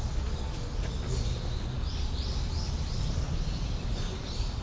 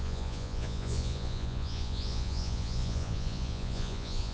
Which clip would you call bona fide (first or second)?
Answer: first